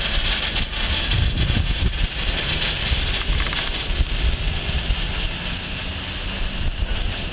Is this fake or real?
real